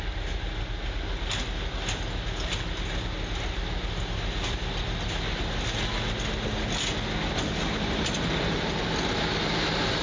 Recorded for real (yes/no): yes